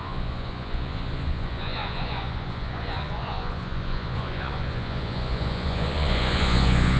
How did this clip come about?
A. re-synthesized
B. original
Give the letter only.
A